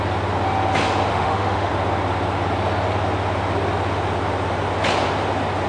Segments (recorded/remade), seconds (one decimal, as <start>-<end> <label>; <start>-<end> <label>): 0.0-1.1 recorded; 1.1-1.7 remade; 1.7-5.7 recorded